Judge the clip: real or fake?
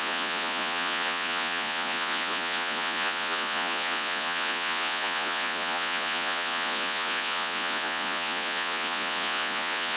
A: fake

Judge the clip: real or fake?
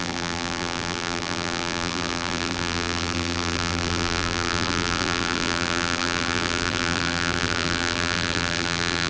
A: fake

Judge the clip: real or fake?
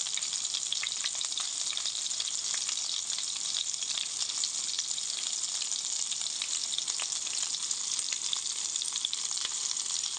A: real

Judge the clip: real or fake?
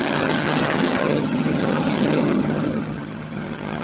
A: fake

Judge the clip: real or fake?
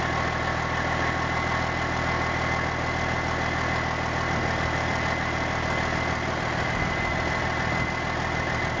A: real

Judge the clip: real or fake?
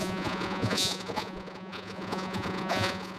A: fake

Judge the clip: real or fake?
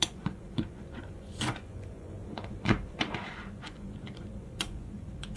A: fake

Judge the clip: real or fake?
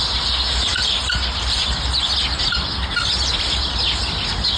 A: real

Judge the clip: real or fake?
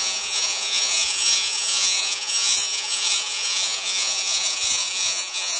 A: fake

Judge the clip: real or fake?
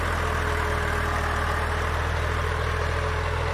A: real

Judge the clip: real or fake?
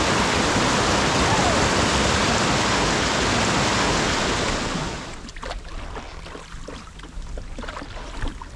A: real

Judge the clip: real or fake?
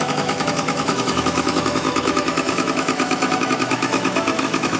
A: fake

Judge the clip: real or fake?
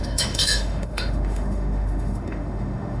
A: fake